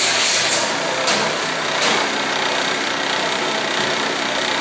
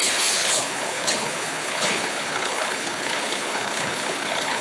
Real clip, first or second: first